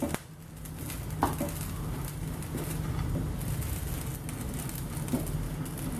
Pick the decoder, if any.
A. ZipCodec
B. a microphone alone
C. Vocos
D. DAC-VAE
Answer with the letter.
B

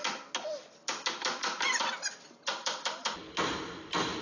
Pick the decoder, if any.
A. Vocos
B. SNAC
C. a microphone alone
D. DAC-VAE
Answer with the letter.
C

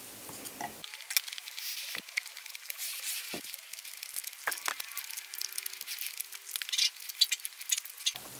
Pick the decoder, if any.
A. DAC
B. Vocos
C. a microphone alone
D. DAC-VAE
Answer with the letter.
C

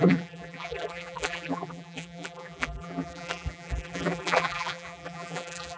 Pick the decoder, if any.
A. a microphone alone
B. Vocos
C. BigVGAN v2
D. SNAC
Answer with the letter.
C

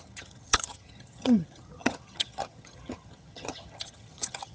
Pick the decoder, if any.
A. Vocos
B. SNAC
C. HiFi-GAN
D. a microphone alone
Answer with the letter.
C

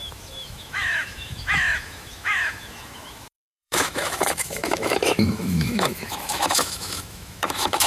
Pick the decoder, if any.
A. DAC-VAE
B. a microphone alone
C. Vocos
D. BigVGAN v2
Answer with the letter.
A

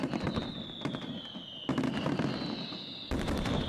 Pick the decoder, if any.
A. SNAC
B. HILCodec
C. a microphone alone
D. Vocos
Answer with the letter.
C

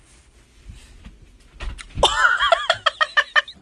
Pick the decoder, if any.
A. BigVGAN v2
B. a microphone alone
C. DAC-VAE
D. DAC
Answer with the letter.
B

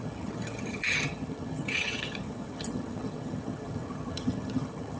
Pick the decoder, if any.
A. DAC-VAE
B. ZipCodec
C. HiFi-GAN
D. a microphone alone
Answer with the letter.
C